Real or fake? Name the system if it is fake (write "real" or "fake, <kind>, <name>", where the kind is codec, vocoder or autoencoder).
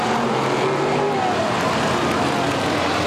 real